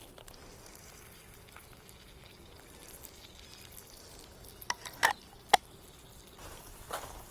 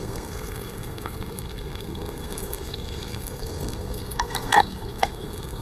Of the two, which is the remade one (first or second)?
second